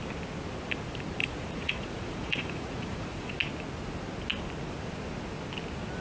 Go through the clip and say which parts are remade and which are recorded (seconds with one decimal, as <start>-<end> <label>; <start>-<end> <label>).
0.0-1.2 recorded; 1.2-3.3 remade; 3.3-6.0 recorded